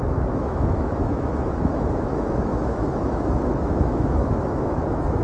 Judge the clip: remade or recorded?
remade